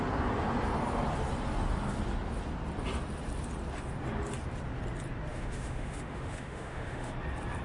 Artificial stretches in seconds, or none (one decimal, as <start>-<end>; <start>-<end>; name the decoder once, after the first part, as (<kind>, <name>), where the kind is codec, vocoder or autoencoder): 5.3-7.1 (autoencoder, DAC-VAE)